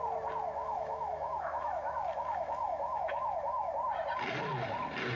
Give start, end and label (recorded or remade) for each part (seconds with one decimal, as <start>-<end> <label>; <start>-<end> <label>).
0.0-0.6 recorded; 0.6-3.7 remade; 3.7-5.2 recorded